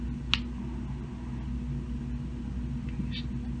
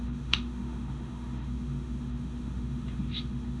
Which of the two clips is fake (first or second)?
second